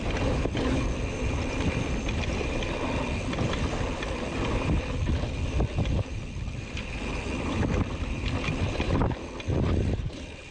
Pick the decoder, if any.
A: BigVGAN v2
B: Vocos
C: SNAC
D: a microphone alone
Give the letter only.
A